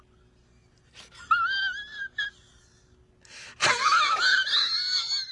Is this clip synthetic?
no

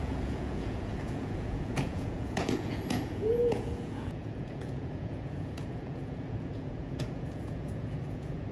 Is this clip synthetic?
yes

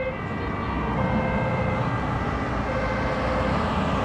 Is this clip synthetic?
no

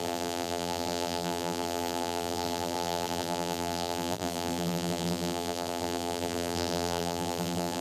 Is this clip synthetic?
yes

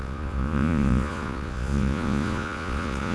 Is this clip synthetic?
yes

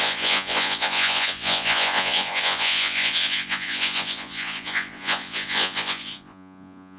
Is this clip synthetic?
yes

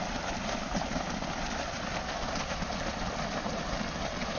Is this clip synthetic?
no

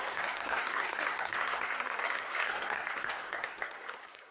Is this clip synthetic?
yes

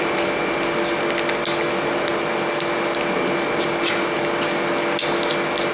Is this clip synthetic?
no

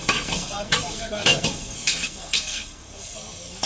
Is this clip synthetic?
yes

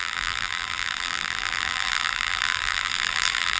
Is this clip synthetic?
yes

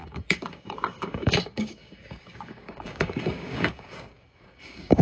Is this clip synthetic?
yes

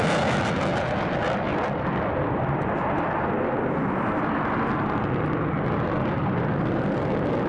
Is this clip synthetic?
no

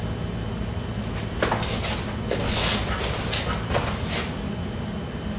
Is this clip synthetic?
no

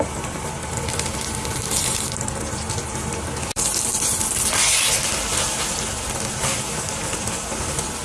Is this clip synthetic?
yes